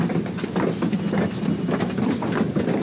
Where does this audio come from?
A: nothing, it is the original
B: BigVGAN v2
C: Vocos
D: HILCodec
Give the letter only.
A